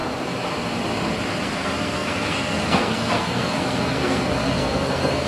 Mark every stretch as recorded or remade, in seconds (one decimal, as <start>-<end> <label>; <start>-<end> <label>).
0.0-1.4 recorded; 1.4-5.3 remade